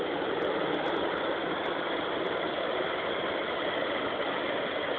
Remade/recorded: recorded